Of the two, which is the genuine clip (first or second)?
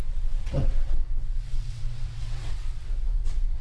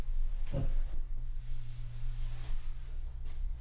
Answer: second